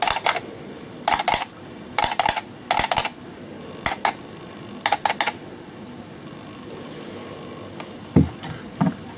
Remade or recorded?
recorded